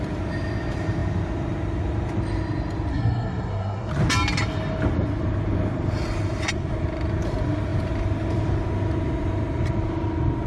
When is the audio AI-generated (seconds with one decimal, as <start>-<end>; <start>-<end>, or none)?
2.9-3.9